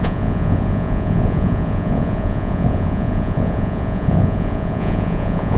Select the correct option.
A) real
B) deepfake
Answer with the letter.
B